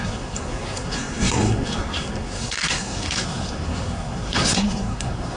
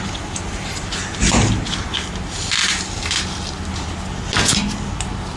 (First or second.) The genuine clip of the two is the second